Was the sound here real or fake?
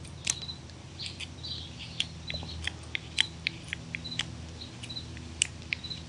real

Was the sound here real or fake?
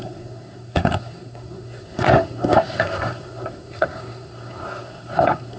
fake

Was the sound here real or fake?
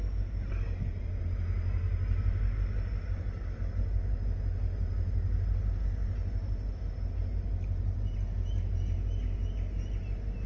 real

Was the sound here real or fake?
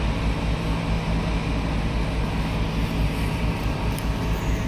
real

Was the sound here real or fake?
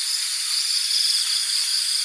real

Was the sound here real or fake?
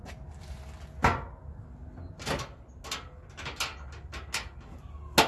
real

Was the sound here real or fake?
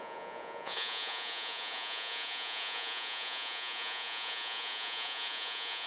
fake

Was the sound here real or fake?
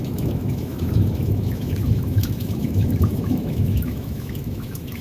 fake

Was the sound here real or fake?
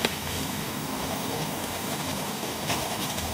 fake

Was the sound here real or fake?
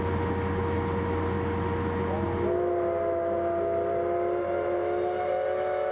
real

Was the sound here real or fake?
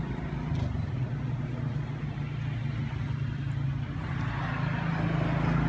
real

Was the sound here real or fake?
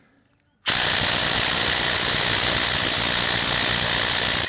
real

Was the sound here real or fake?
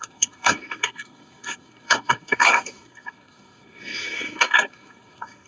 fake